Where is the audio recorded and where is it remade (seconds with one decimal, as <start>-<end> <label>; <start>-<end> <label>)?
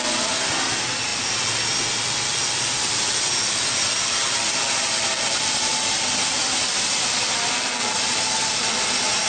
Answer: 0.0-9.3 recorded